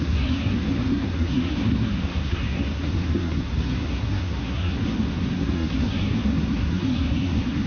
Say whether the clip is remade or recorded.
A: remade